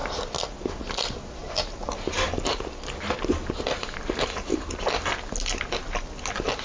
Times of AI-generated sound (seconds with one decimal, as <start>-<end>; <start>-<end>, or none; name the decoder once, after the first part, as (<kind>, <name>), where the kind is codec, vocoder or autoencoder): none